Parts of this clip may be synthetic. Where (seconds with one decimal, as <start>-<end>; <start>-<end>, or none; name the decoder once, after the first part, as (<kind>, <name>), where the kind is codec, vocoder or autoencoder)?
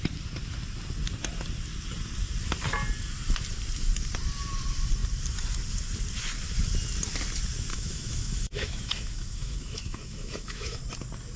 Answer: 7.7-10.8 (autoencoder, DAC-VAE)